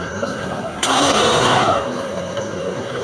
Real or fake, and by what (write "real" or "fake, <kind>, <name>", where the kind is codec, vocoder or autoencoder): fake, codec, SNAC